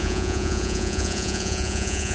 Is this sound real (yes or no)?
no